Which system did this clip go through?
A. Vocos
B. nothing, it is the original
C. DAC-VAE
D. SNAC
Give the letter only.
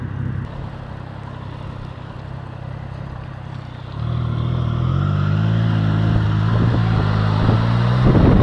B